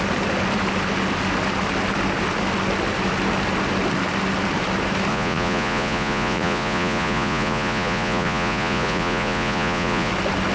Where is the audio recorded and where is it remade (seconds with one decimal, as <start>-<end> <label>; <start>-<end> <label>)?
0.0-5.1 recorded; 5.1-10.1 remade; 10.1-10.5 recorded